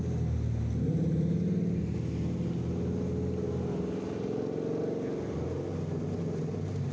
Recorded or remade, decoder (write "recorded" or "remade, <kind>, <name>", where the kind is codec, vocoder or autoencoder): recorded